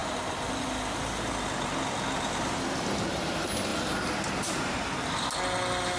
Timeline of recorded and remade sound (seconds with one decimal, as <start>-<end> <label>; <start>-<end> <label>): 0.0-6.0 recorded

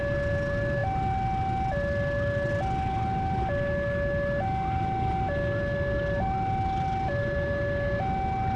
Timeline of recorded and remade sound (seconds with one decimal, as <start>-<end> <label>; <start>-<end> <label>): 0.0-8.6 recorded